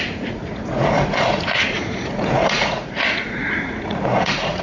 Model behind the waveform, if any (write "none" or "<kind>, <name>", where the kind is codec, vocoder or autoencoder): vocoder, Vocos